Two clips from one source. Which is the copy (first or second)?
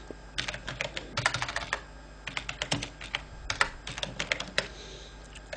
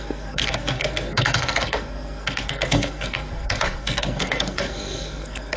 second